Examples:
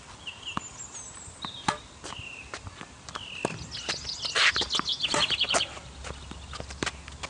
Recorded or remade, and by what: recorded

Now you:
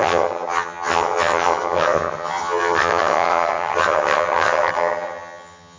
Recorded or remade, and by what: remade, vocoder, HiFi-GAN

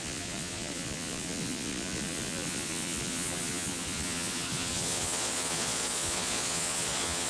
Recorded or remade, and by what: remade, vocoder, Vocos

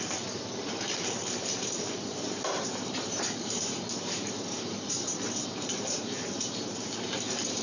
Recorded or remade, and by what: remade, vocoder, BigVGAN v2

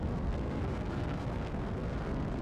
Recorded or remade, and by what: remade, codec, SNAC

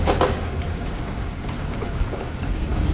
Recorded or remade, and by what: remade, codec, DAC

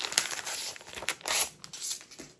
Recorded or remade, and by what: recorded